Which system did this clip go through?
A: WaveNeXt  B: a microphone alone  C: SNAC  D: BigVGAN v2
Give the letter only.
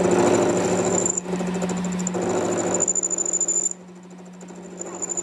B